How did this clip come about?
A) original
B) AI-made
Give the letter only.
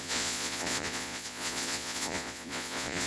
B